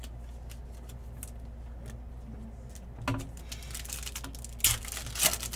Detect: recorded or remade recorded